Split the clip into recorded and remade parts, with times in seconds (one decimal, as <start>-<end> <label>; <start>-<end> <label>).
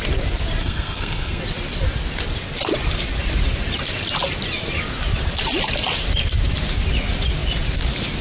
0.0-0.6 recorded; 0.6-1.4 remade; 1.4-8.2 recorded